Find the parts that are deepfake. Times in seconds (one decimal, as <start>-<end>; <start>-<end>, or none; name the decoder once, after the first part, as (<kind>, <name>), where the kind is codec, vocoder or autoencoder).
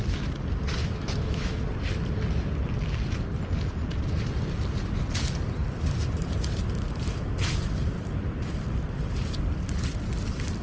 0.8-1.6 (autoencoder, DAC-VAE)